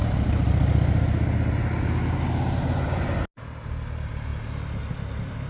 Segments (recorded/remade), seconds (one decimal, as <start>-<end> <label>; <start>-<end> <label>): 0.0-5.5 recorded